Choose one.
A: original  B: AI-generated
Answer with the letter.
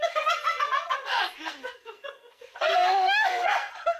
B